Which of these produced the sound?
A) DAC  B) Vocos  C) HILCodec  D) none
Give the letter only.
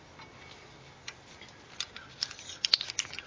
D